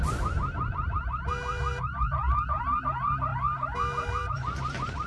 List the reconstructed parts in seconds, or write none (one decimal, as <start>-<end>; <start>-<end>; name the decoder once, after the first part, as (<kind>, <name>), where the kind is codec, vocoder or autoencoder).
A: 0.0-5.1 (vocoder, BigVGAN v2)